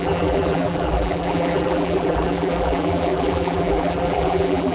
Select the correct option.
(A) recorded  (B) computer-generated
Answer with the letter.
B